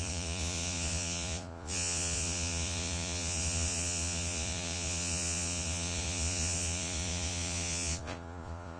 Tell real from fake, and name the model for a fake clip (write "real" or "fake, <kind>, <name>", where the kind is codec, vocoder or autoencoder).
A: fake, vocoder, Vocos